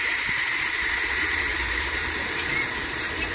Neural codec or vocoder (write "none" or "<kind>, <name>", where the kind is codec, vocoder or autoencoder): vocoder, BigVGAN v2